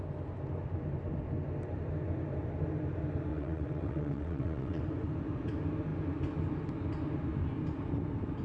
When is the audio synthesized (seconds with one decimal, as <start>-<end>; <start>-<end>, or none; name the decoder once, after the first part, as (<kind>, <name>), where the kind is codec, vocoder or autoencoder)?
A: 3.3-4.8 (vocoder, WaveNeXt)